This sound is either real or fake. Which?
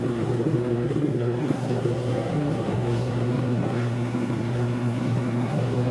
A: fake